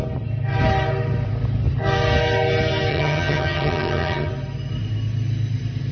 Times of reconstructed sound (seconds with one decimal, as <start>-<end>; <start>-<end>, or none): 2.9-4.3